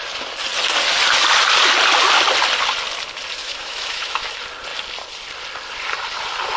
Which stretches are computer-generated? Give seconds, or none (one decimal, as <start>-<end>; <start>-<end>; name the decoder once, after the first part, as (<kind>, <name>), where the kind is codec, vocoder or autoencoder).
3.4-4.3 (autoencoder, DAC-VAE)

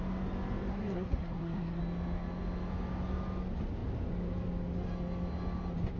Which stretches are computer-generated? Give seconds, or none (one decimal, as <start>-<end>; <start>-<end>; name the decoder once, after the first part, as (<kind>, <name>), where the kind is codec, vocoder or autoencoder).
0.7-1.8 (codec, SNAC)

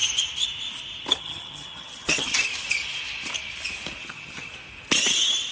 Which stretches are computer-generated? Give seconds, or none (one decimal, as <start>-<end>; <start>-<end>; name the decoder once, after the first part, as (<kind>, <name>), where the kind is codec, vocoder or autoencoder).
1.2-2.5 (vocoder, HiFi-GAN); 4.0-4.5

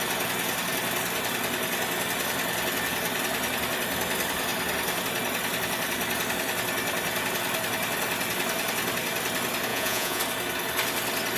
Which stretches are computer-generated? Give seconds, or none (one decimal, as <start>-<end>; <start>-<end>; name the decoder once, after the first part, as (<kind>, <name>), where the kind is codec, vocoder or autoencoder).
9.7-10.2 (vocoder, Vocos)